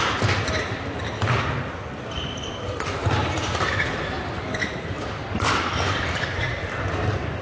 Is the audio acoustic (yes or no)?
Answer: yes